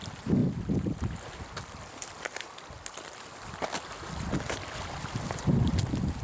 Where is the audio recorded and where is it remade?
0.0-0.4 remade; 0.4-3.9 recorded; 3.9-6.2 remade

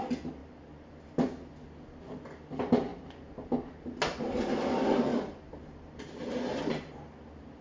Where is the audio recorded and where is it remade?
0.0-5.1 recorded; 5.1-6.6 remade; 6.6-7.6 recorded